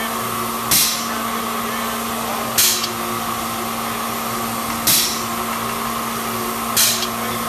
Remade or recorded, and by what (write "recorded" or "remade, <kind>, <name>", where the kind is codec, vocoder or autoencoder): recorded